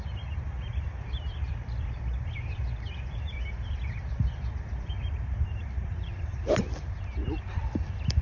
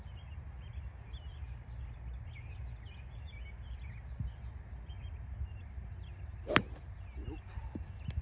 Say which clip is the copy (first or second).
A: first